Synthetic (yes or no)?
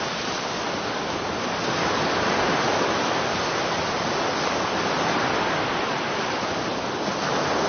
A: no